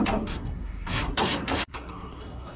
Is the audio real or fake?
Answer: fake